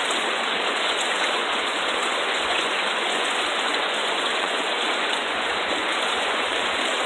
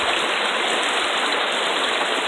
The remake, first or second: first